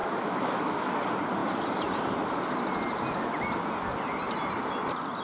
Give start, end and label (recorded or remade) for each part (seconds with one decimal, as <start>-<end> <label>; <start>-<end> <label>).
0.0-0.9 remade; 0.9-5.2 recorded